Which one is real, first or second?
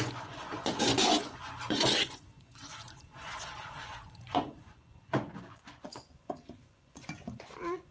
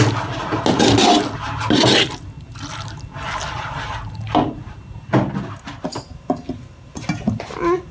second